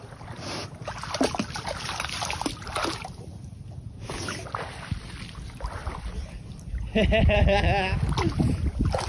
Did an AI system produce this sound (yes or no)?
no